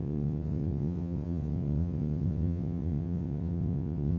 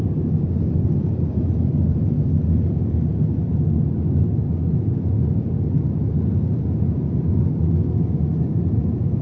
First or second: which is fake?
first